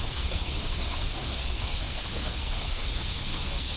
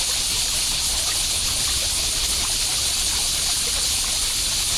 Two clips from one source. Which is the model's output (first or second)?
first